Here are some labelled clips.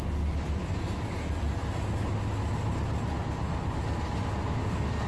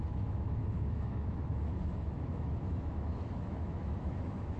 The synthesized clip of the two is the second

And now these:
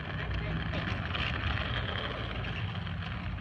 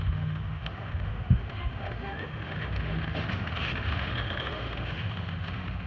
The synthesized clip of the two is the second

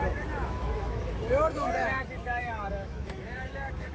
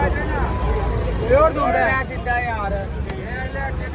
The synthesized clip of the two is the first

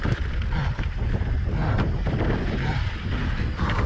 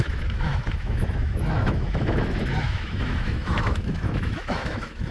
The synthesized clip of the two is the second